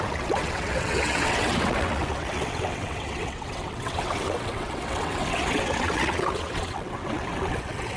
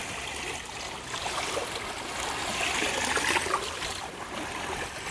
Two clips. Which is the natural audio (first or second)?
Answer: second